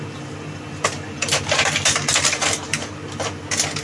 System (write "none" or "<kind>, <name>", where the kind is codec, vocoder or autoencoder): none